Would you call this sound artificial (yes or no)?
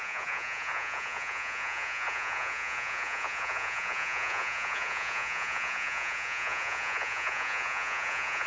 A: yes